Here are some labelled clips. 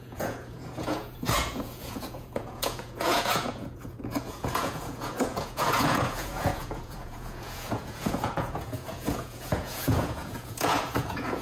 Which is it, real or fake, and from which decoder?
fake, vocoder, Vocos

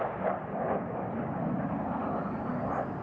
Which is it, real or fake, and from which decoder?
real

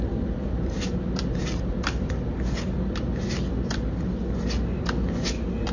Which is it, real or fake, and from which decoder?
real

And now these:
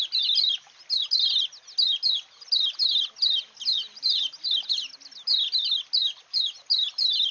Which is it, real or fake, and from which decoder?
real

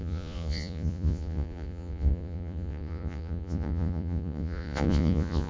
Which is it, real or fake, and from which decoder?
fake, vocoder, Vocos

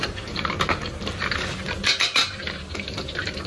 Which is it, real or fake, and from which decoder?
real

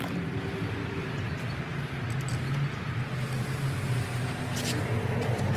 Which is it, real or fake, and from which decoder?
real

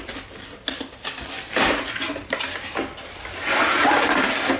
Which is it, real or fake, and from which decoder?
real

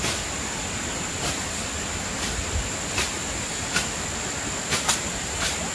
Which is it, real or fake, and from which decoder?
real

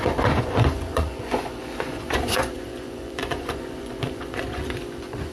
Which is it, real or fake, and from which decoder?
fake, vocoder, Vocos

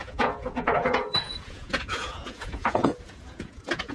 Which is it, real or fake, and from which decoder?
fake, vocoder, Vocos